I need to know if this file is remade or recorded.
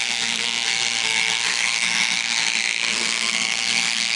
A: remade